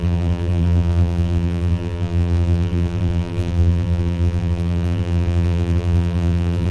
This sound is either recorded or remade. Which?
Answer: remade